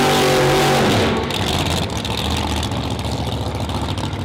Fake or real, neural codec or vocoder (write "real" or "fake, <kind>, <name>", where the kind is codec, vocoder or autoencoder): real